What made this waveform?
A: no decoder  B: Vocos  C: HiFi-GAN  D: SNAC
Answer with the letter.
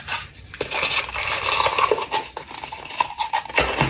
A